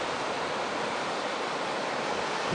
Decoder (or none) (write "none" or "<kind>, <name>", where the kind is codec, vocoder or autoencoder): none